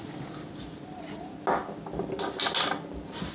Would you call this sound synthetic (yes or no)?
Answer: no